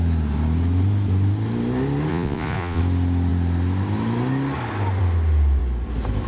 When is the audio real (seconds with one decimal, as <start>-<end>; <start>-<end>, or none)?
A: 0.0-2.1; 2.8-6.3